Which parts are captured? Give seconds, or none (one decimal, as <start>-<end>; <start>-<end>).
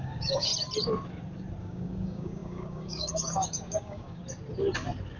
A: 0.5-1.6; 4.2-5.2